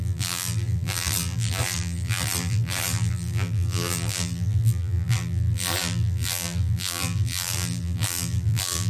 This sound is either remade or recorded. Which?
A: remade